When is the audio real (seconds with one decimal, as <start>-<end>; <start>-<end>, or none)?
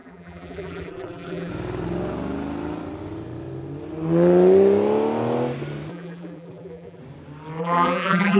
1.5-5.9; 7.0-7.6